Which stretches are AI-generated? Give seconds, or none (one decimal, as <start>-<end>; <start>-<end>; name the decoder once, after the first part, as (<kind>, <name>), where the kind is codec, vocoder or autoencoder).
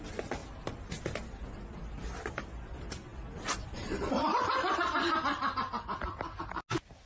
none